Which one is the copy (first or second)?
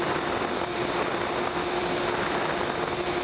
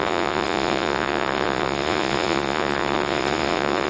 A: second